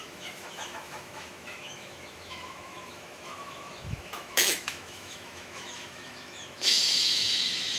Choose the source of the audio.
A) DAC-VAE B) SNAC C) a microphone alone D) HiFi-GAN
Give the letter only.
A